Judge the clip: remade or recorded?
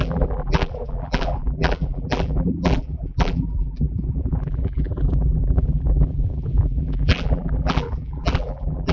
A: remade